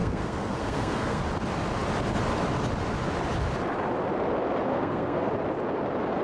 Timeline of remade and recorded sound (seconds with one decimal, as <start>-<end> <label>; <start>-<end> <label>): 0.0-1.2 remade; 1.2-4.7 recorded; 4.7-5.3 remade; 5.3-6.2 recorded